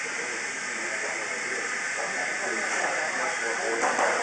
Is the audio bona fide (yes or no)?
no